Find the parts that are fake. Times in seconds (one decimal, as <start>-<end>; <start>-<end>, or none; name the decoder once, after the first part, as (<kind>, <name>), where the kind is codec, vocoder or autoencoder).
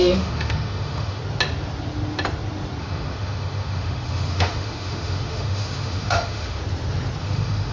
0.0-1.2 (autoencoder, DAC-VAE); 2.8-6.6; 7.2-7.7